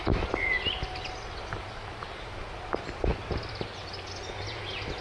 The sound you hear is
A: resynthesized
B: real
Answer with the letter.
B